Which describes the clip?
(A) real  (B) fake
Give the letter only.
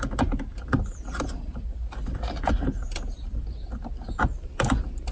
A